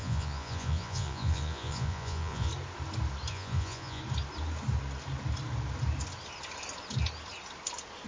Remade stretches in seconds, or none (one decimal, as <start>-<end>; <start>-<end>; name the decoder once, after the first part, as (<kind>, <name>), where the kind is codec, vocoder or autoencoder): 0.0-2.5 (vocoder, Vocos); 3.3-4.0